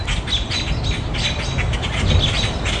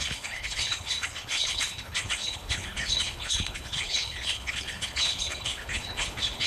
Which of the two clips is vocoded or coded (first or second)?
second